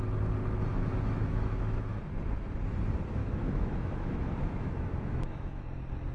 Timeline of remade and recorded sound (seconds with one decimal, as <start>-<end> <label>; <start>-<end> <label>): 0.0-0.7 recorded; 0.7-2.0 remade; 2.0-3.2 recorded; 3.2-5.6 remade; 5.6-6.1 recorded